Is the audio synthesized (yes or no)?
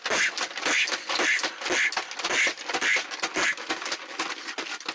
no